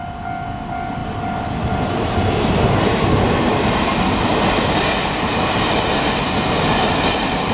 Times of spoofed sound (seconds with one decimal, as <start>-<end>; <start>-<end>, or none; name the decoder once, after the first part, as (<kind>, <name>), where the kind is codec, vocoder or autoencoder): none